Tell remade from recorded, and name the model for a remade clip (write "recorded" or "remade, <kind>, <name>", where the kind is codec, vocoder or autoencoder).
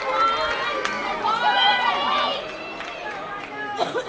recorded